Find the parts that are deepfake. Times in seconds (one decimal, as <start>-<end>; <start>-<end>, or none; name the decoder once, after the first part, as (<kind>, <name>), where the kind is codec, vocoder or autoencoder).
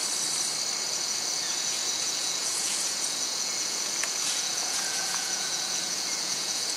0.8-6.8 (vocoder, Vocos)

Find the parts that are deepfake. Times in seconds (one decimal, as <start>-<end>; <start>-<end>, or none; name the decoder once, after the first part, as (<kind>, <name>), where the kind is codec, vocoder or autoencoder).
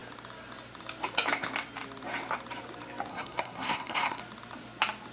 3.1-4.2 (codec, SNAC)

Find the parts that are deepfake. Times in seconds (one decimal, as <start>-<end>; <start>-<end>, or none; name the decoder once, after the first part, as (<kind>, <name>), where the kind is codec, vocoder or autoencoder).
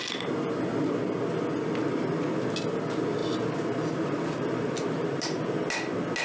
3.2-5.4 (vocoder, BigVGAN v2)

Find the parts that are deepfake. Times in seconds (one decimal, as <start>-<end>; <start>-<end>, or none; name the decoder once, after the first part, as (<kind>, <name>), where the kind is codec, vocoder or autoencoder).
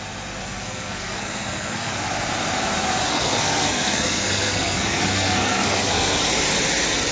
0.4-1.9 (codec, SNAC); 3.1-6.2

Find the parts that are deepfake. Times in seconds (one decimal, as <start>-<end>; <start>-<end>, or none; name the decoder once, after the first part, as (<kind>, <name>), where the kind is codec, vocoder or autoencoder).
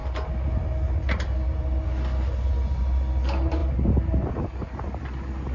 none